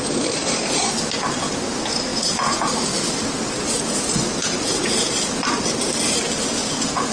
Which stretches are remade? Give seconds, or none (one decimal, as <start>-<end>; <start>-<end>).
2.1-2.7; 4.4-5.1; 6.6-7.1